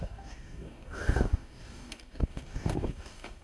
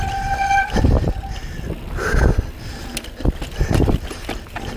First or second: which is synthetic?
first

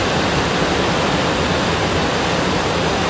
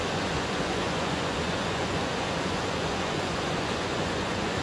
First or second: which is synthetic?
second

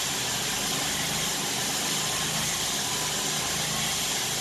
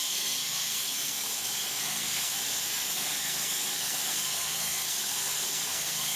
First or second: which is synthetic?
second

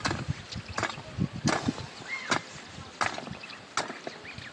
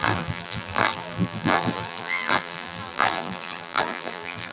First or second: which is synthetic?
second